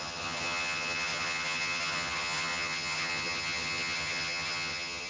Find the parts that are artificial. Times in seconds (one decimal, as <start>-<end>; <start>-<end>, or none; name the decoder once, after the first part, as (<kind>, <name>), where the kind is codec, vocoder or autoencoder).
0.0-5.1 (vocoder, HiFi-GAN)